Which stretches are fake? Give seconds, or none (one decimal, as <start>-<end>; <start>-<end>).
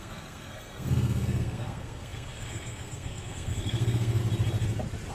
0.0-4.2